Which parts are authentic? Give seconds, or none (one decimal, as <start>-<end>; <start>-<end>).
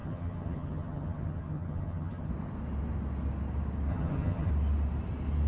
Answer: 2.3-3.9; 4.5-5.5